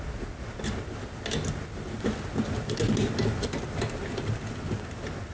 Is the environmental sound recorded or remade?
recorded